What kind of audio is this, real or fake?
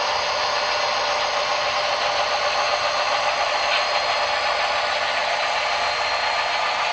real